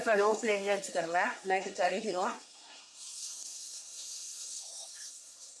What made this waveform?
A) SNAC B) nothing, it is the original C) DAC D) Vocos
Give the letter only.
A